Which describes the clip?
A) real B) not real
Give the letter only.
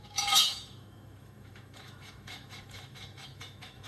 B